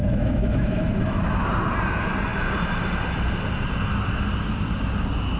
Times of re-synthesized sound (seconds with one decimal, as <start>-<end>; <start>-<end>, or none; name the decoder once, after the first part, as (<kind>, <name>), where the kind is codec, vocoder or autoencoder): 0.0-1.5 (autoencoder, DAC-VAE)